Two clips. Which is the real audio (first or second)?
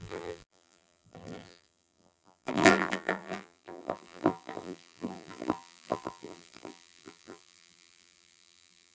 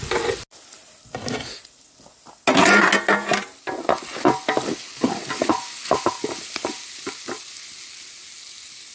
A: second